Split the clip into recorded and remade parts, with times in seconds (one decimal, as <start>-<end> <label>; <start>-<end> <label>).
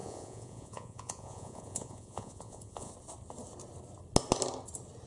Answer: 0.0-2.9 remade; 2.9-5.1 recorded